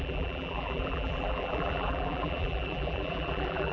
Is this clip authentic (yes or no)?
no